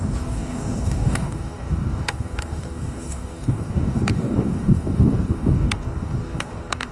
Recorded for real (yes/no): no